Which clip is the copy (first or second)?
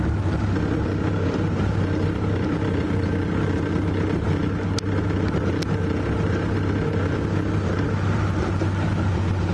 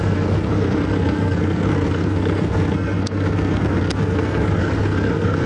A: second